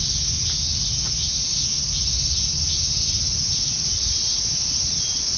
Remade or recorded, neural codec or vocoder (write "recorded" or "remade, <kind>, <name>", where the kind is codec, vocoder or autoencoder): recorded